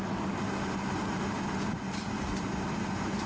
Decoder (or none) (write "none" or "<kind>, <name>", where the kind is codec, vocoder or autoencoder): none